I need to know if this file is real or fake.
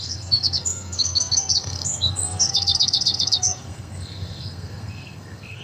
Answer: fake